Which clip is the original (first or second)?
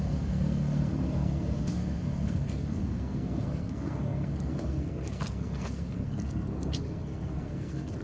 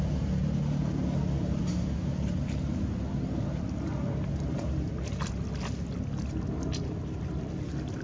second